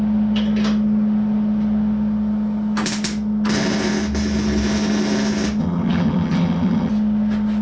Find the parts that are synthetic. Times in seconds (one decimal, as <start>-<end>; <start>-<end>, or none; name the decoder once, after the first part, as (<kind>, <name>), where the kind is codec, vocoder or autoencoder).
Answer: 5.6-6.9 (vocoder, HiFi-GAN)